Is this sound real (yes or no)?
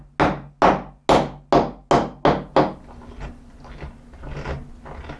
yes